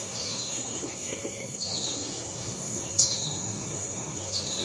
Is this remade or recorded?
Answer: remade